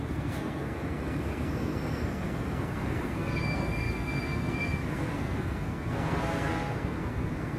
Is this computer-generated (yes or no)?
yes